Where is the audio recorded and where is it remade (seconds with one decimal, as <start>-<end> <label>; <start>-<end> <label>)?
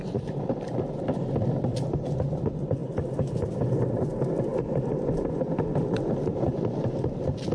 0.0-7.5 recorded